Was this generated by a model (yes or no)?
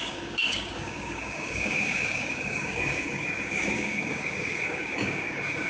yes